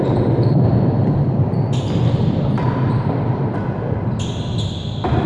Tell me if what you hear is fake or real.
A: real